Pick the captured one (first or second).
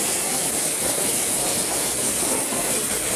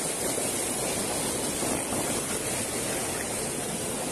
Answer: second